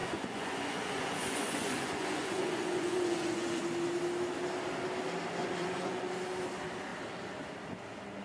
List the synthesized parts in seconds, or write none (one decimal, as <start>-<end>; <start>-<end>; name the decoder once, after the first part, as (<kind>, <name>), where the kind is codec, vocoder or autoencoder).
0.0-3.6 (vocoder, Vocos); 5.4-6.0